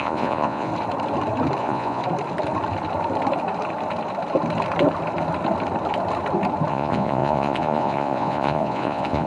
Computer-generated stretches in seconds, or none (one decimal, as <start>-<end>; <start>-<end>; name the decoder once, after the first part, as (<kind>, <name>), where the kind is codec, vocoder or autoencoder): 0.0-0.7 (vocoder, Vocos); 1.6-2.0; 6.7-9.3